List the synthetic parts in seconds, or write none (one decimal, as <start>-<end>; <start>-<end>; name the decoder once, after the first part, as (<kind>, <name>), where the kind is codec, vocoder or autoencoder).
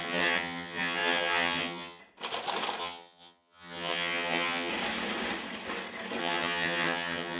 0.0-2.0 (vocoder, HiFi-GAN); 2.8-4.7; 6.2-7.4